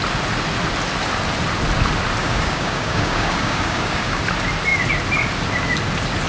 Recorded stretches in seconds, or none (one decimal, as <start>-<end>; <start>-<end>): 0.0-2.2; 4.2-6.3